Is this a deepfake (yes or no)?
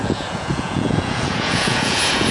yes